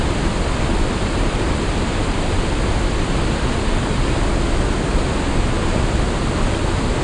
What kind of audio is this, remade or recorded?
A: recorded